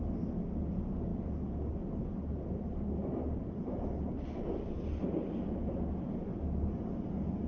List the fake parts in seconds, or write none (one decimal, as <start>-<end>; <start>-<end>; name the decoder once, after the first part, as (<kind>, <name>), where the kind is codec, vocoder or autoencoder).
none